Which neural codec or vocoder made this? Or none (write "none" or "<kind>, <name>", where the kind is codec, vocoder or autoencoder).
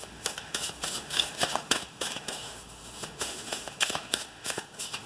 autoencoder, DAC-VAE